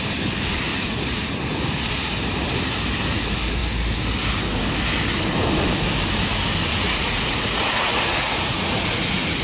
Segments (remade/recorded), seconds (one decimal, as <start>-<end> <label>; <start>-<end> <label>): 0.0-0.7 recorded; 0.7-1.8 remade; 1.8-6.7 recorded; 6.7-9.4 remade